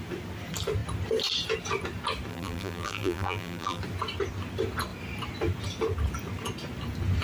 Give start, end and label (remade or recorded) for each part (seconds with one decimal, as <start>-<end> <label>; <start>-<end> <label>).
0.0-2.3 recorded; 2.3-3.8 remade; 3.8-7.2 recorded